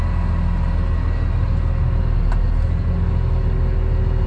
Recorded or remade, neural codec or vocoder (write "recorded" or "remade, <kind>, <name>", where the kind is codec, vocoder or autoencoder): recorded